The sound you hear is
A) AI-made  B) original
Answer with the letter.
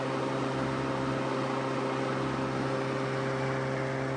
B